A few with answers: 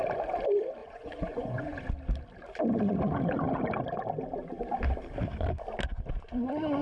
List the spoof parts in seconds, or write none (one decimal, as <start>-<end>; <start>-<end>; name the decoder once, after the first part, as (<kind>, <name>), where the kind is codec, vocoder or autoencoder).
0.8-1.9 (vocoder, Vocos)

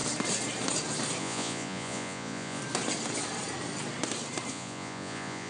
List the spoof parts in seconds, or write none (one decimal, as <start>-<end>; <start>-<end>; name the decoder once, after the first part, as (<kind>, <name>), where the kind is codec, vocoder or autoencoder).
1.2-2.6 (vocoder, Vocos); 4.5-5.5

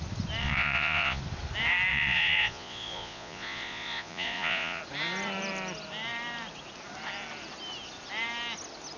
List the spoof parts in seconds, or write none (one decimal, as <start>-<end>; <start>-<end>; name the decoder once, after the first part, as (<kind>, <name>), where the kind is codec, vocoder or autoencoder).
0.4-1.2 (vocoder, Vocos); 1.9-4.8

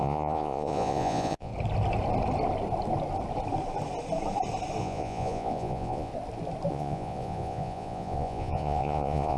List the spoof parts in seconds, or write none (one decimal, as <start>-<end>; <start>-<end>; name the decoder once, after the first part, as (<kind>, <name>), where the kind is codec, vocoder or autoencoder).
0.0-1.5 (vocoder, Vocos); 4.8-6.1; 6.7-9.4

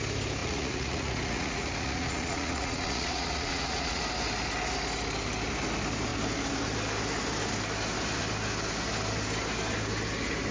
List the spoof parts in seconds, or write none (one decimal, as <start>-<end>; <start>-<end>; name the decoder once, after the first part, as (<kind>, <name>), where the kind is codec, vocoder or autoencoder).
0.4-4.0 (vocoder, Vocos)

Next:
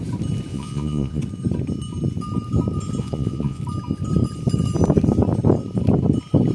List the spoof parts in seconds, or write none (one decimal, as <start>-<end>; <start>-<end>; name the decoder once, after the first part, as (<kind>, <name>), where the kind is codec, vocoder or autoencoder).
0.5-1.2 (vocoder, Vocos); 3.0-3.6

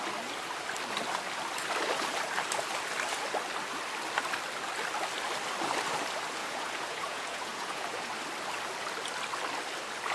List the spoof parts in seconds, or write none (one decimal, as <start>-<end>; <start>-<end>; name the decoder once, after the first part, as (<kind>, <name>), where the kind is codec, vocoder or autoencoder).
6.4-8.1 (vocoder, Vocos)